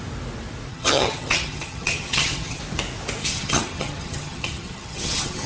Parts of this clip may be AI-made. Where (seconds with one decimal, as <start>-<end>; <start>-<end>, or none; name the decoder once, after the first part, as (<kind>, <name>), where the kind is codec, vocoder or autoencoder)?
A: 0.7-2.6 (vocoder, HiFi-GAN); 3.2-5.5